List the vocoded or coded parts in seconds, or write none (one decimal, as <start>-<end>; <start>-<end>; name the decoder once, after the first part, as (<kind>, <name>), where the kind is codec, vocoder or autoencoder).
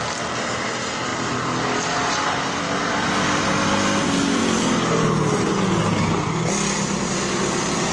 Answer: none